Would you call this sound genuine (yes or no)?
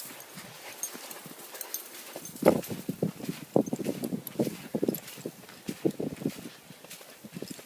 yes